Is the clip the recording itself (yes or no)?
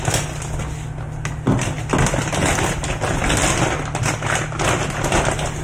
yes